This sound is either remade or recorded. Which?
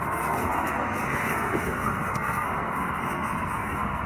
remade